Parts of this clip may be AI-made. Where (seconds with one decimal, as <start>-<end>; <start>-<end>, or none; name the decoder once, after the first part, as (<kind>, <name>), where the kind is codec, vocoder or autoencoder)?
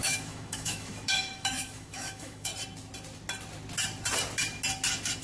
0.0-2.5 (autoencoder, DAC-VAE)